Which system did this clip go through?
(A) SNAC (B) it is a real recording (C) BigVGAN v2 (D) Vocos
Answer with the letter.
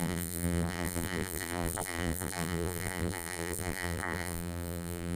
C